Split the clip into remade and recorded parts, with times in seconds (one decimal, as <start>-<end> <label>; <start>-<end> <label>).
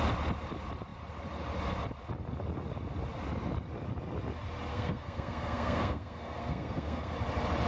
0.0-4.7 recorded; 4.7-7.1 remade; 7.1-7.7 recorded